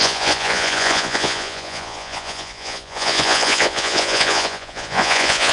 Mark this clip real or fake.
fake